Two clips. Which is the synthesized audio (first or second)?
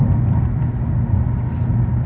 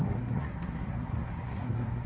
second